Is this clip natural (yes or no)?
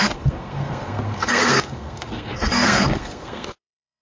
no